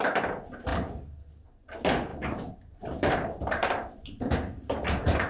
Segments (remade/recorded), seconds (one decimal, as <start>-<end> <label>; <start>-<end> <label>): 0.0-2.1 recorded; 2.1-5.3 remade